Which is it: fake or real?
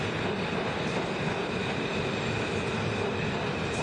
real